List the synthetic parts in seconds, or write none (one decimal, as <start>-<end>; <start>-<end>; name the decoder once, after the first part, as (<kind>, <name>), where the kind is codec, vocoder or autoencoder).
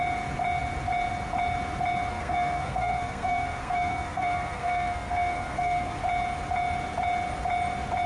2.1-6.0 (codec, SNAC)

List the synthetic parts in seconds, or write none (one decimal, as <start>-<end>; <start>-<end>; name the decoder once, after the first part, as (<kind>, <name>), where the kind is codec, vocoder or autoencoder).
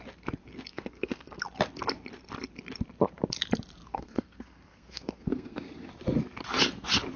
0.7-1.4 (codec, SNAC); 3.9-5.9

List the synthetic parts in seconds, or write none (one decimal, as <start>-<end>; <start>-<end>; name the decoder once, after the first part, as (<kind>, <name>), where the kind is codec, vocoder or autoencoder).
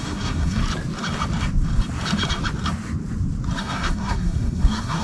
0.0-0.6 (codec, SNAC); 3.6-5.0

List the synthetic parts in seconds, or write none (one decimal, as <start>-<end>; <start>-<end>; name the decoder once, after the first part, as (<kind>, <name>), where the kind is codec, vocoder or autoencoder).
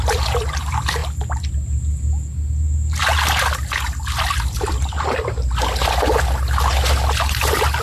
none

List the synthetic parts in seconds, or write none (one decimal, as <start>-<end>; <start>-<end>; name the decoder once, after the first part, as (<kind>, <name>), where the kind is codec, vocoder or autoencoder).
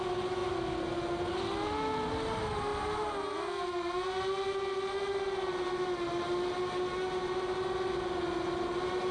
none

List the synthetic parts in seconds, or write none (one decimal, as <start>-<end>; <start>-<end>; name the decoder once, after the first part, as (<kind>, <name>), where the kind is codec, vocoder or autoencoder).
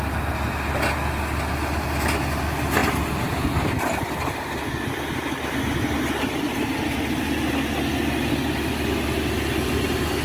none